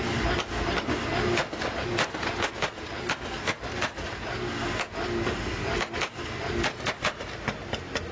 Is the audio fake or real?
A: real